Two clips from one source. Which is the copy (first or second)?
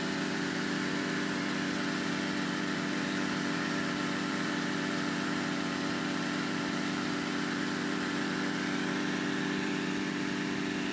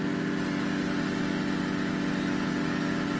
first